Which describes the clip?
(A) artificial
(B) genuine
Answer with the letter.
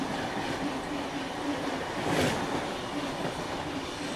B